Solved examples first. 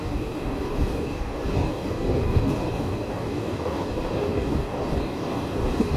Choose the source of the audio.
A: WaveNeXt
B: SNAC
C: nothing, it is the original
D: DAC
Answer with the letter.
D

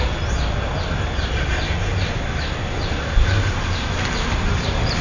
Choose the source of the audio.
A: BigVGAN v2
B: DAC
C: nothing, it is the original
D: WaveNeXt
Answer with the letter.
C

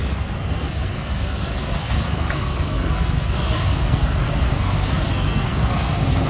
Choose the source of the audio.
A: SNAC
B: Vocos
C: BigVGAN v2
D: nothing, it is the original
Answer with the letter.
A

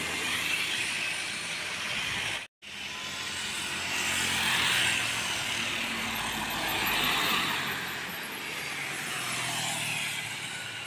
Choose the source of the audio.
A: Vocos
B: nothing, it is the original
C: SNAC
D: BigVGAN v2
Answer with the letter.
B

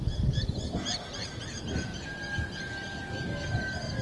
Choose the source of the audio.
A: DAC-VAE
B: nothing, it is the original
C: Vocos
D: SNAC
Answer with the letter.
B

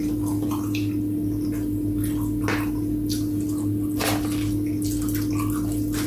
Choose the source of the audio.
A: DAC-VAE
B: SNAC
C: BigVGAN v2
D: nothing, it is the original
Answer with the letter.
D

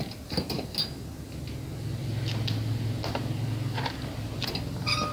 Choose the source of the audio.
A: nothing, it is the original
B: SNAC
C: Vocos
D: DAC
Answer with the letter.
A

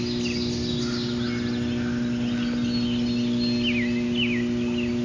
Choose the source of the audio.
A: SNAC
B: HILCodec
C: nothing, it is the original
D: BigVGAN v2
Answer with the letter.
C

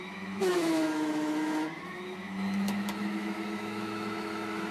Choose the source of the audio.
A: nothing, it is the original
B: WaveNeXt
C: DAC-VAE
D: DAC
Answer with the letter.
C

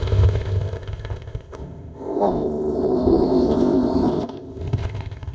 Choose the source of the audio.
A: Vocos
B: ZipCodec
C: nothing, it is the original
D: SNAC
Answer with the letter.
B